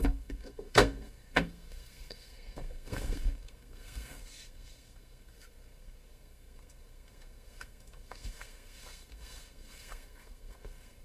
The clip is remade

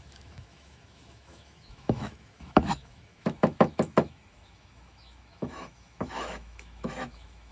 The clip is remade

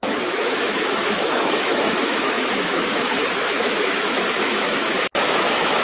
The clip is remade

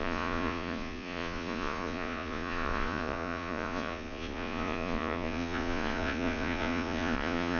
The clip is remade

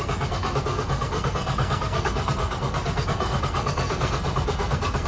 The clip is remade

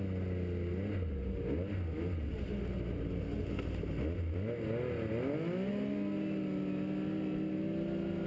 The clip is recorded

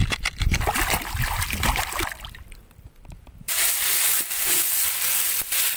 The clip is remade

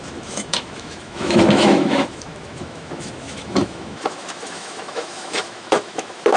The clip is remade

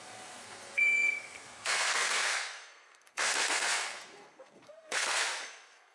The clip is remade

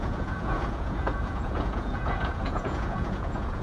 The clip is remade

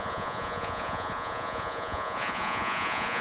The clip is remade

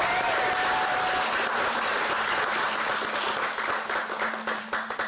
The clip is recorded